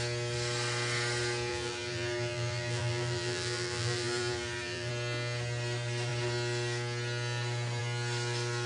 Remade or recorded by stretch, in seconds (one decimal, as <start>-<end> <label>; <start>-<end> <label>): 0.0-1.5 recorded; 1.5-4.9 remade; 4.9-8.7 recorded